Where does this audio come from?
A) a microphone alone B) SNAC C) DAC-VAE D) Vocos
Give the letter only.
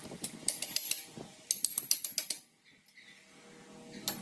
A